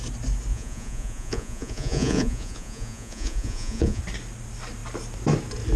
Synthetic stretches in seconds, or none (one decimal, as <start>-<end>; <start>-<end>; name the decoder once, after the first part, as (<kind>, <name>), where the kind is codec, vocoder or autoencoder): 0.5-4.0 (vocoder, Vocos)